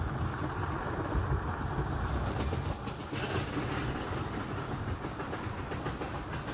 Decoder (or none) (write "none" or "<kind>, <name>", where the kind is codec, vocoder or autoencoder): none